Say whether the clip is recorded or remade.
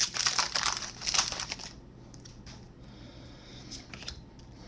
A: recorded